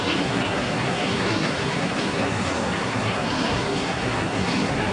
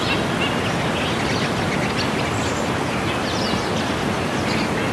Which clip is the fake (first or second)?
first